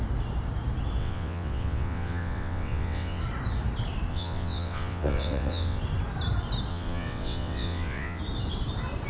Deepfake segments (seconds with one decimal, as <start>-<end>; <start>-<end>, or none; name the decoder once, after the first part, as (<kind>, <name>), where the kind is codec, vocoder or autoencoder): 1.0-3.2 (vocoder, WaveNeXt); 4.1-5.8; 6.7-8.2